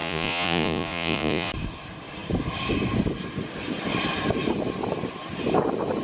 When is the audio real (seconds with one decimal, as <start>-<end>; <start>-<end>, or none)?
1.5-6.0